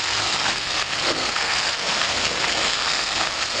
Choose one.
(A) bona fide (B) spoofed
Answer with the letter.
B